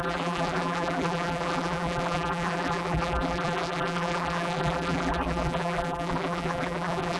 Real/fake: fake